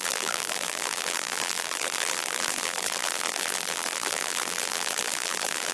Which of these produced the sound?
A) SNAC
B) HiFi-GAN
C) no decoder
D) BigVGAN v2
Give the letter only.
D